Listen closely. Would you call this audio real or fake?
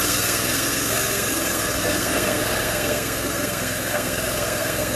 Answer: fake